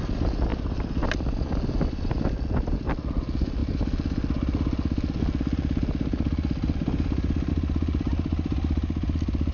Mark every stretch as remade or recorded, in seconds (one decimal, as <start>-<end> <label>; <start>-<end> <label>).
0.0-9.5 recorded